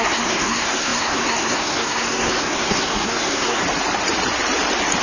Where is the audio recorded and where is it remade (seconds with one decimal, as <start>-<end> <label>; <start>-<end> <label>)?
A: 0.0-3.6 remade; 3.6-5.0 recorded